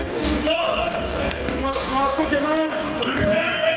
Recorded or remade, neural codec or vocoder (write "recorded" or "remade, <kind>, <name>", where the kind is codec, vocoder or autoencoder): remade, codec, DAC